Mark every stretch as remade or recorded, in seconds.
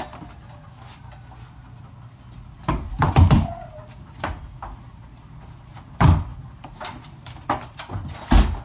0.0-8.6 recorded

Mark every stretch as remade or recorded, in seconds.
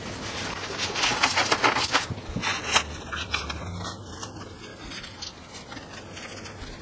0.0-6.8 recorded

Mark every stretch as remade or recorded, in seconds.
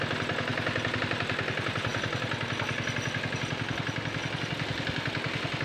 0.0-5.6 recorded